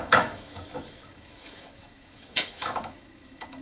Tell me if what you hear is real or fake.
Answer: fake